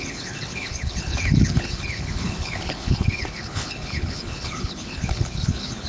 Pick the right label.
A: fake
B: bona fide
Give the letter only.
A